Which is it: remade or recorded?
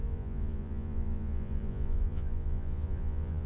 remade